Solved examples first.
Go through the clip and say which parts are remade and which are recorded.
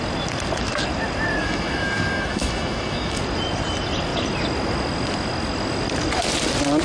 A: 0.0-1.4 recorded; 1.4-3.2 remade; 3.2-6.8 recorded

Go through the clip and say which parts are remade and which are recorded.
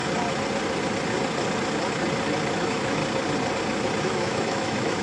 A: 0.0-2.5 recorded; 2.5-3.0 remade; 3.0-4.0 recorded; 4.0-5.0 remade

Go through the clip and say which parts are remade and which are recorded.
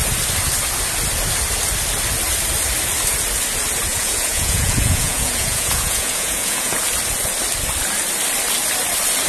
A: 0.0-3.9 recorded; 3.9-6.8 remade; 6.8-9.3 recorded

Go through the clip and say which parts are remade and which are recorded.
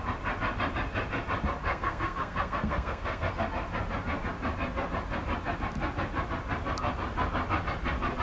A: 0.0-1.7 recorded; 1.7-3.3 remade; 3.3-8.2 recorded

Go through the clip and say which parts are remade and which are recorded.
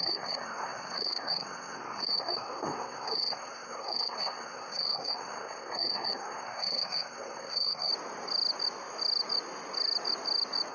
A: 0.0-7.9 remade; 7.9-10.7 recorded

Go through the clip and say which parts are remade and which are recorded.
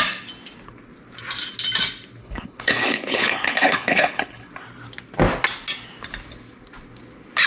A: 0.0-2.2 recorded; 2.2-4.5 remade; 4.5-7.5 recorded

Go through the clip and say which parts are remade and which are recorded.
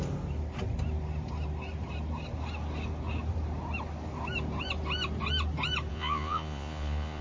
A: 0.0-5.9 recorded; 5.9-7.2 remade